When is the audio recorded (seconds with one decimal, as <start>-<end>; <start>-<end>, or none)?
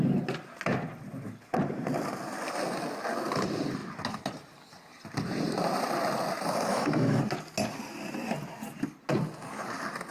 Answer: 0.0-6.7; 7.2-10.1